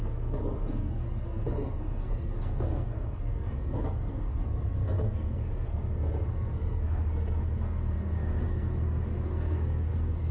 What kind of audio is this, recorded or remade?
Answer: remade